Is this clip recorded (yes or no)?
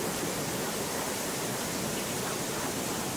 yes